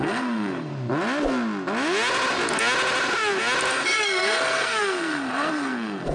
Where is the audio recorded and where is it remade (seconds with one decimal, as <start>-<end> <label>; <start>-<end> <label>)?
0.0-0.7 remade; 0.7-3.7 recorded; 3.7-6.1 remade